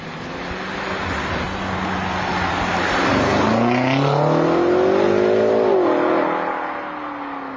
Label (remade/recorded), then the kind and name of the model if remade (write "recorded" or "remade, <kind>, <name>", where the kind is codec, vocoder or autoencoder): recorded